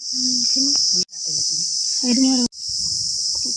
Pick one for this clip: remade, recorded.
recorded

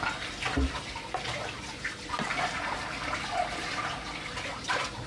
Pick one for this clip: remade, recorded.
remade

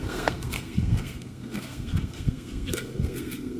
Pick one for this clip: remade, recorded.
remade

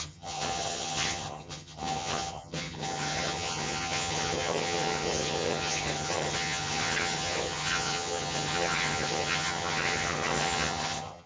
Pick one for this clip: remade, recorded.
remade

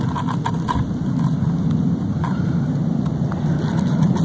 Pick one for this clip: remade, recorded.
recorded